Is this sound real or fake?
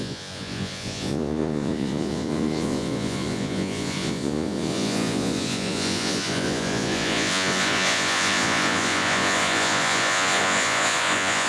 fake